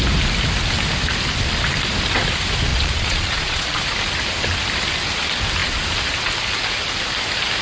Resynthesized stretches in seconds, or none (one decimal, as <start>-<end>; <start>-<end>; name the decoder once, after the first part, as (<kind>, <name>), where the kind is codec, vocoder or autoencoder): 2.7-3.8 (vocoder, Vocos)